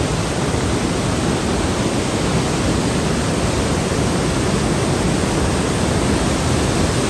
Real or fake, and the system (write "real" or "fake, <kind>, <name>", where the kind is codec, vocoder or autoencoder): real